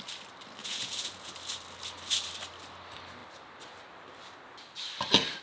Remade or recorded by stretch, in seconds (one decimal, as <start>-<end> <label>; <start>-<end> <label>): 0.0-0.6 recorded; 0.6-1.3 remade; 1.3-5.4 recorded